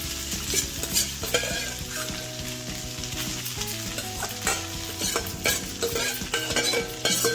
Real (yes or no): yes